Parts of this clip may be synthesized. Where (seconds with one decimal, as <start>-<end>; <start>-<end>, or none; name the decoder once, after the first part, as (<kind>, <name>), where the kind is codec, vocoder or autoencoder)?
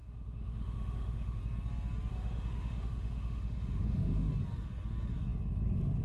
0.0-1.4 (autoencoder, DAC-VAE); 2.1-4.3